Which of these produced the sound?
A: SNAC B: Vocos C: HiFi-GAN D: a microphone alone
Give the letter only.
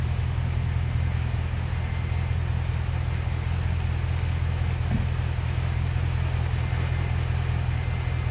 D